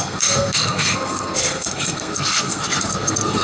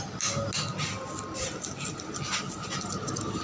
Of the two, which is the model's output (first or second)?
first